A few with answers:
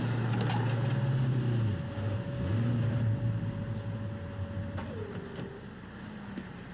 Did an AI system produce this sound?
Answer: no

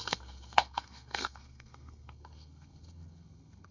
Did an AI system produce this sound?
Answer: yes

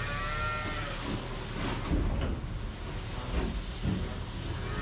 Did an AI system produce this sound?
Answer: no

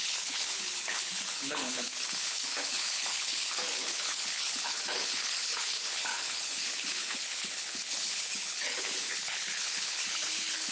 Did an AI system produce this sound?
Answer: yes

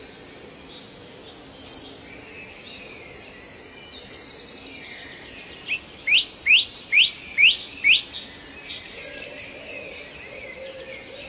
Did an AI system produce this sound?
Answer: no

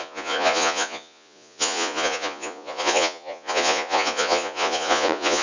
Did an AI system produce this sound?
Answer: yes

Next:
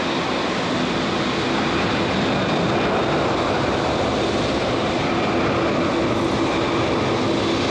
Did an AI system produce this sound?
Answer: no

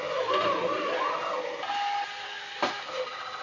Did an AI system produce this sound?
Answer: no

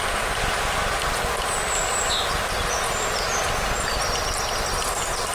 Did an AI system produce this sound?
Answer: no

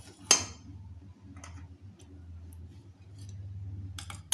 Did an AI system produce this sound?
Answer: no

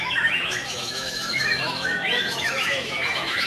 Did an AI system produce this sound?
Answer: yes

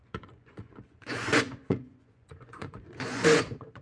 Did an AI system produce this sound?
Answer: yes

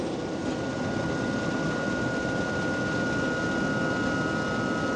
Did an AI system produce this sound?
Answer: no